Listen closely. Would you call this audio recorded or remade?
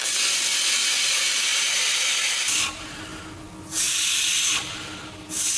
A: recorded